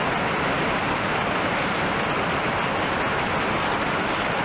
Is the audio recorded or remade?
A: recorded